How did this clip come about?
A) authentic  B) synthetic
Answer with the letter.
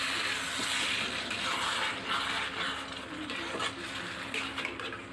A